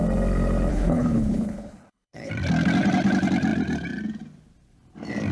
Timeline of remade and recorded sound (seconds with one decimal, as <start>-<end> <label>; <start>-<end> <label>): 0.0-0.7 recorded; 0.7-2.3 remade; 2.3-5.3 recorded